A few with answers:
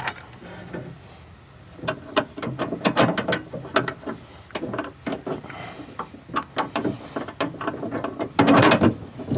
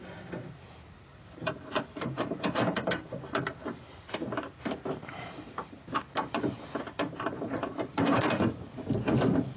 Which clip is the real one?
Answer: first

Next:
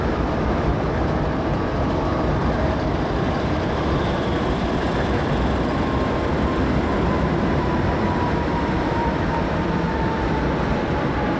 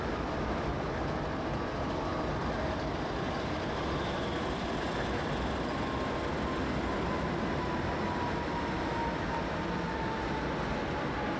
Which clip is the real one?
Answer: second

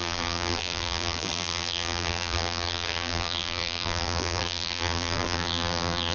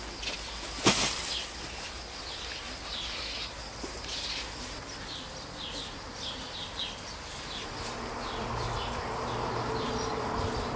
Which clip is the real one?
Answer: second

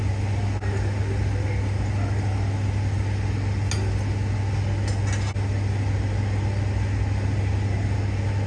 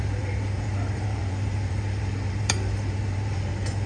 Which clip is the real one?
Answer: first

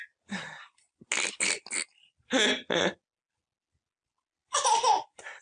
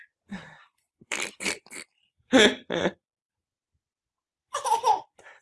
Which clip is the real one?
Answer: first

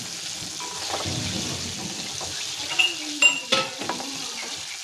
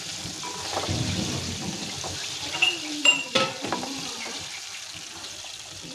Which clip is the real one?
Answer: first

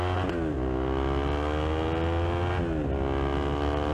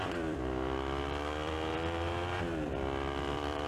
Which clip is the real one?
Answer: first